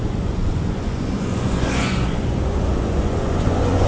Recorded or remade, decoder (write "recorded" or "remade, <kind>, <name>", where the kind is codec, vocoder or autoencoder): remade, vocoder, Vocos